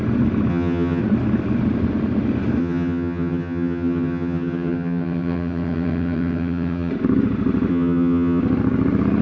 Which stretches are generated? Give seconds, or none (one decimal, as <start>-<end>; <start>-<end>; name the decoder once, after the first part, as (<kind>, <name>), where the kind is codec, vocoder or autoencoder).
0.5-1.0 (vocoder, HiFi-GAN); 2.6-6.9; 7.7-8.4